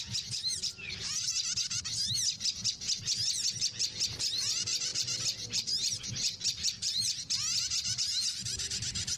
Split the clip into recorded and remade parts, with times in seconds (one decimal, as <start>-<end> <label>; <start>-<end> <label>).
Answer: 0.0-4.9 recorded; 4.9-7.6 remade; 7.6-9.2 recorded